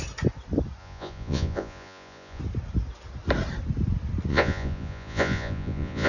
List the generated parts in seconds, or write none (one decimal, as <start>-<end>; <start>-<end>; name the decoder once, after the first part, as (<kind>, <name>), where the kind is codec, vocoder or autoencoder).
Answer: 0.8-2.4 (vocoder, Vocos); 4.3-6.1